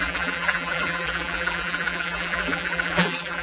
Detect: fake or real fake